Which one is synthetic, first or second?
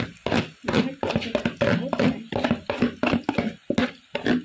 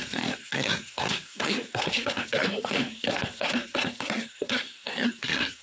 second